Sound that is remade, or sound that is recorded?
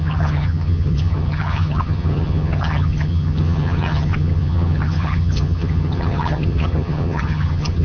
remade